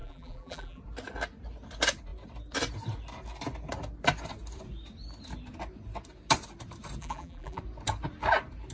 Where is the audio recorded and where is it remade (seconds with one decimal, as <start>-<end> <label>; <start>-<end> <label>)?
0.0-0.8 remade; 0.8-7.0 recorded; 7.0-7.6 remade; 7.6-8.7 recorded